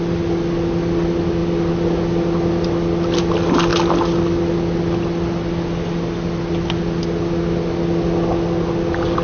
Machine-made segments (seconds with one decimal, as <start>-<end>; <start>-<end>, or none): none